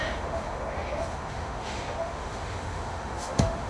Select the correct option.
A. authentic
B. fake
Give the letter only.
B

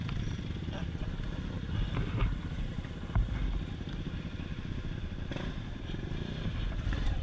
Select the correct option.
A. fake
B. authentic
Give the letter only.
B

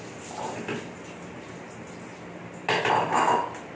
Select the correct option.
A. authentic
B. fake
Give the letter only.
A